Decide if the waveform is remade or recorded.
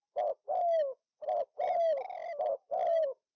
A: recorded